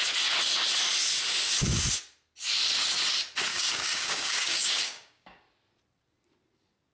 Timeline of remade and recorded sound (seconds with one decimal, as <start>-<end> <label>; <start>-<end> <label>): 0.0-3.5 recorded; 3.5-5.4 remade; 5.4-6.9 recorded